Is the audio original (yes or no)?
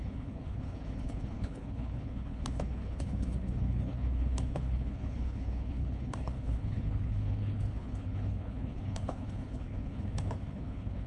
no